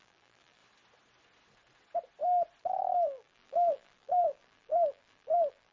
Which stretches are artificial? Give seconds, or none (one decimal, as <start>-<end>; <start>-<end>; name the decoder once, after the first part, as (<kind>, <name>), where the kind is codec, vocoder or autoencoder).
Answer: 0.0-0.6 (vocoder, BigVGAN v2); 2.6-5.7